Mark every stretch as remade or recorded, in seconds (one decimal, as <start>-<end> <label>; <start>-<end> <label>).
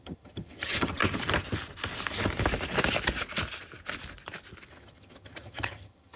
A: 0.0-1.0 remade; 1.0-4.7 recorded; 4.7-6.2 remade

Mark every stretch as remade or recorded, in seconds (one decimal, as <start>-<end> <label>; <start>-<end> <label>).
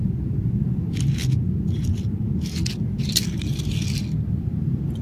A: 0.0-5.0 recorded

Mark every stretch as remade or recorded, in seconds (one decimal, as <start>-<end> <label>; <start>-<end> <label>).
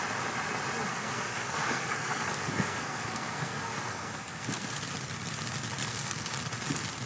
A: 0.0-0.9 recorded; 0.9-4.8 remade; 4.8-5.8 recorded; 5.8-6.3 remade; 6.3-7.1 recorded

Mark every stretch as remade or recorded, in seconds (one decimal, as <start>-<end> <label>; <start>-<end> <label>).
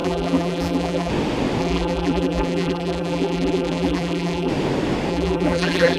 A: 0.0-1.1 remade; 1.1-1.6 recorded; 1.6-4.5 remade; 4.5-5.1 recorded; 5.1-6.0 remade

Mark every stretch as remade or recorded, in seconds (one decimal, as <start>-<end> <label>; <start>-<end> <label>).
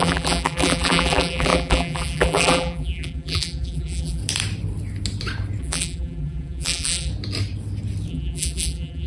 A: 0.0-4.2 remade; 4.2-5.6 recorded; 5.6-7.1 remade; 7.1-8.1 recorded; 8.1-9.1 remade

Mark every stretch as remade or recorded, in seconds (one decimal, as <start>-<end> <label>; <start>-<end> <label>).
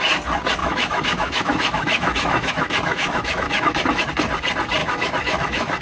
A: 0.0-0.6 recorded; 0.6-4.1 remade; 4.1-4.8 recorded; 4.8-5.8 remade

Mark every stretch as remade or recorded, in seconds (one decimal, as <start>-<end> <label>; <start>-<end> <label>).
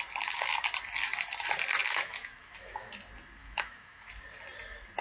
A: 0.0-1.8 recorded; 1.8-2.9 remade; 2.9-3.4 recorded; 3.4-4.1 remade; 4.1-5.0 recorded